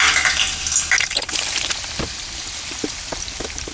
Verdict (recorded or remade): recorded